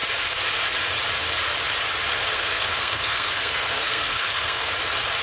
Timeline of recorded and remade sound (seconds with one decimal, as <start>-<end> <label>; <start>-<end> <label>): 0.0-2.1 recorded; 2.1-4.7 remade; 4.7-5.2 recorded